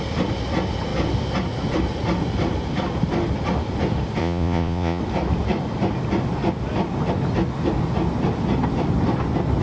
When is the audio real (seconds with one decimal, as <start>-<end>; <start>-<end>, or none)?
0.0-4.2; 5.0-9.6